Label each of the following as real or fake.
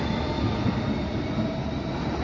real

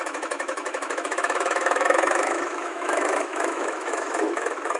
fake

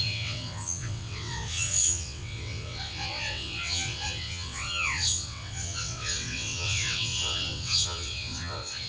fake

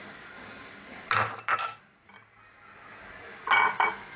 real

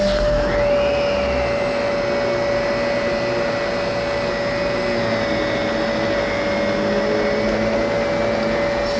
real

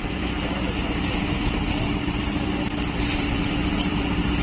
real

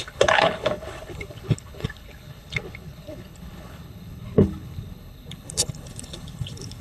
fake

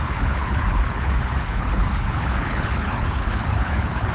fake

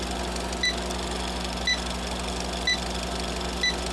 real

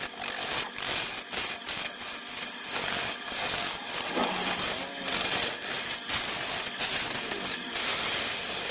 real